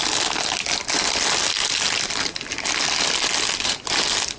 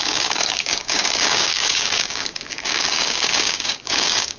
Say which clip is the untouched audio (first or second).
first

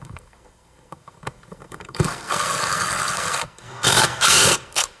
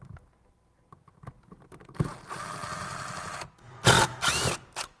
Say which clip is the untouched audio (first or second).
second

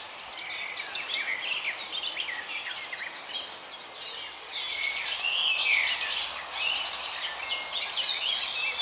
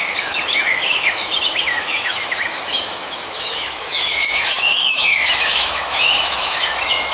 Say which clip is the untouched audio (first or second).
first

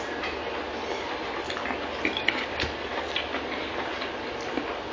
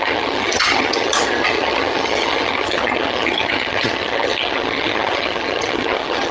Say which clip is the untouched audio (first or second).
first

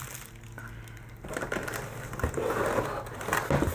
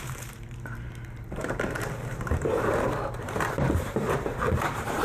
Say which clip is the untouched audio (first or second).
first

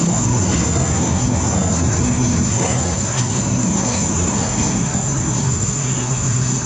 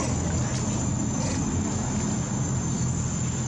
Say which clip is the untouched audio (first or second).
second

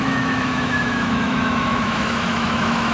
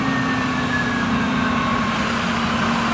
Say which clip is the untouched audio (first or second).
second